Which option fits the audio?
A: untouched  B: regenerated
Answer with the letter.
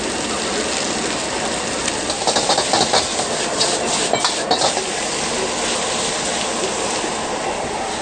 A